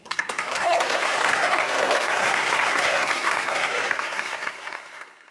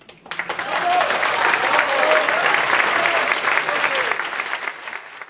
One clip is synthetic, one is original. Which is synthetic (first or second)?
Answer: first